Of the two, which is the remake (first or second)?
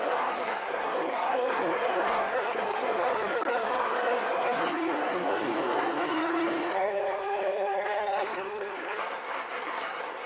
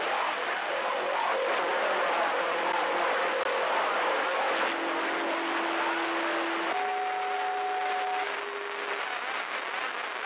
first